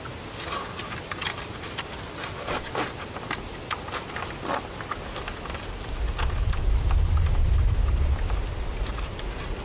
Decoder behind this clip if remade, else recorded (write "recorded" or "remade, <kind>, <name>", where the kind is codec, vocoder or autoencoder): recorded